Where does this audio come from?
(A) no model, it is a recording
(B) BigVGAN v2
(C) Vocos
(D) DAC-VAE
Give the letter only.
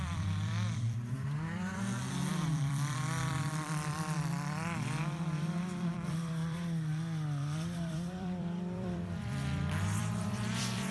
B